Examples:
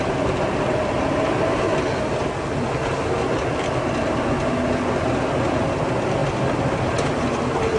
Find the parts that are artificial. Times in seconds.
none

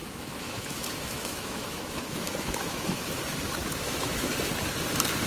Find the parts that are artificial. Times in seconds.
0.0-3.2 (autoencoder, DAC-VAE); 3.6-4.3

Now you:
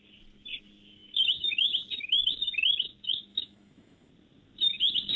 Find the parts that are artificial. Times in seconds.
3.3-4.1 (autoencoder, DAC-VAE)

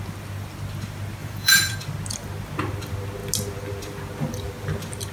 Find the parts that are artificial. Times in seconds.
1.2-1.8 (vocoder, Vocos)

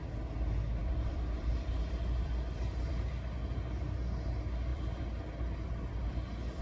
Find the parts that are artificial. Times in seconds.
0.8-3.1 (vocoder, BigVGAN v2); 4.7-5.3